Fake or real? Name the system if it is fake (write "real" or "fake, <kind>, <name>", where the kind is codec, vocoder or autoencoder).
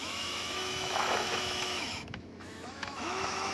fake, autoencoder, DAC-VAE